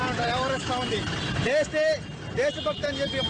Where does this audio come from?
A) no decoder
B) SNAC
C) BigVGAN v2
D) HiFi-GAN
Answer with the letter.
A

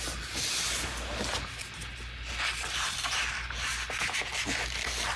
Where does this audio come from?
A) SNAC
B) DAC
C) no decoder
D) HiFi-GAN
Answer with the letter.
C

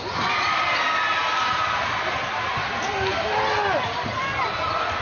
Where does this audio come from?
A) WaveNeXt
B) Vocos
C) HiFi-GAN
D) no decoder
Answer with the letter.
D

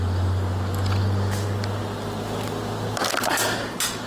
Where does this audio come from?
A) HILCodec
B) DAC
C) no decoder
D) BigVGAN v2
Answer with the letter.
C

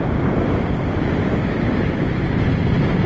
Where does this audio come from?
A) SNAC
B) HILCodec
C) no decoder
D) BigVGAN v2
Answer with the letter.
C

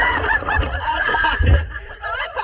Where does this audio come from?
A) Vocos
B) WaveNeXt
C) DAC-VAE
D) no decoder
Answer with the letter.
A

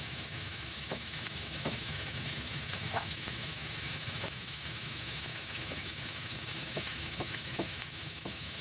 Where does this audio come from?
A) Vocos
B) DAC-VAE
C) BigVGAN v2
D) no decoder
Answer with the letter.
B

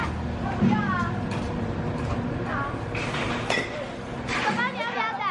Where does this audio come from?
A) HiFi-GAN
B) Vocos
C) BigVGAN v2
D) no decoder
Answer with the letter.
D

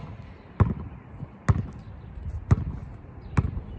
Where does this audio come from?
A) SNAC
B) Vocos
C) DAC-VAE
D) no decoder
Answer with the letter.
D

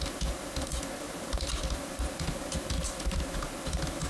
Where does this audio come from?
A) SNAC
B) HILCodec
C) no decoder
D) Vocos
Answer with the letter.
C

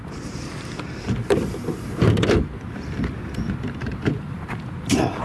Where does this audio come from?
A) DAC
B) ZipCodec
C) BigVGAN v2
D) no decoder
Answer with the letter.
C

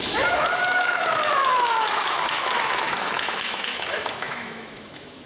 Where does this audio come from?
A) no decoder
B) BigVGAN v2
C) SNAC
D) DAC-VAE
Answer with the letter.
D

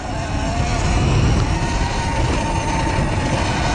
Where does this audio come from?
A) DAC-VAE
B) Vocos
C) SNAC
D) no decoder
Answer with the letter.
D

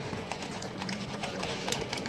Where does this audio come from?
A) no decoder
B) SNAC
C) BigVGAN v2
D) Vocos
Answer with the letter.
D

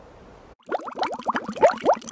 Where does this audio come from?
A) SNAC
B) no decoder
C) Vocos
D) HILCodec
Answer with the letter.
B